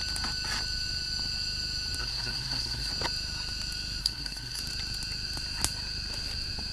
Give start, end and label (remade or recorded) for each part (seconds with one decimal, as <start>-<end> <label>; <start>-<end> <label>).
0.0-2.0 recorded; 2.0-2.9 remade; 2.9-4.0 recorded; 4.0-4.6 remade; 4.6-6.7 recorded